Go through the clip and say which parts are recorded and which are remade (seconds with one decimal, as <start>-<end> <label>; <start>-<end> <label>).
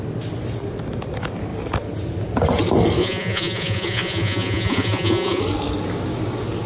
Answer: 0.0-3.0 recorded; 3.0-5.4 remade; 5.4-6.7 recorded